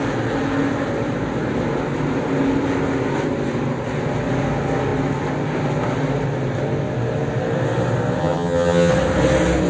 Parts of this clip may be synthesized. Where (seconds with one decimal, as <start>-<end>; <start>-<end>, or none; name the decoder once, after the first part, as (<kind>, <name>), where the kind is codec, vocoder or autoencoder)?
8.2-8.9 (vocoder, HiFi-GAN)

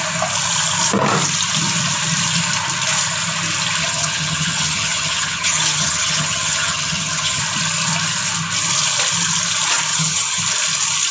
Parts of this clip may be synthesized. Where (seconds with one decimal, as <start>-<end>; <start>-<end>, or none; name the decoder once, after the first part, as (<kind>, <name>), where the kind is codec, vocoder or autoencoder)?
3.8-7.4 (vocoder, HiFi-GAN); 9.9-10.4